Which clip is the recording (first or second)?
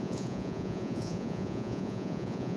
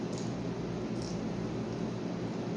second